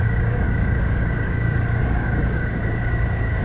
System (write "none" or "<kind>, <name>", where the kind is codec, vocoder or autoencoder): codec, DAC